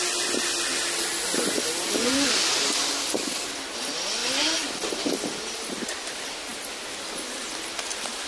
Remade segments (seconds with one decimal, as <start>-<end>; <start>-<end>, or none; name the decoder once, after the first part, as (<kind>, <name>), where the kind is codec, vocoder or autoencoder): 4.2-4.7 (vocoder, BigVGAN v2)